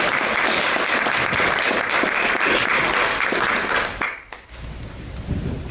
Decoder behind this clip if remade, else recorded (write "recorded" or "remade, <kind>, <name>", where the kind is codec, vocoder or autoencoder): recorded